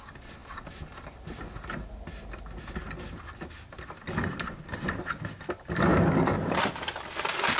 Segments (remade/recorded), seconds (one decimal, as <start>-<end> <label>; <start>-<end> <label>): 0.0-7.6 recorded